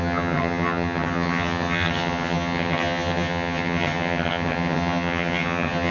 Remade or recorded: remade